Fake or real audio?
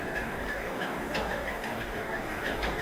fake